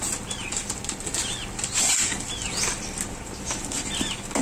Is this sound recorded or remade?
recorded